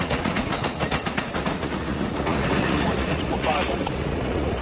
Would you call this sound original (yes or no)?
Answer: no